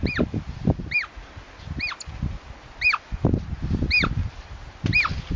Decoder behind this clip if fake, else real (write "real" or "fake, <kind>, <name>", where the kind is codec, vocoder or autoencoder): real